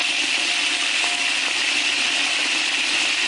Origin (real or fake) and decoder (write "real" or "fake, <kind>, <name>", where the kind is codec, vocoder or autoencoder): real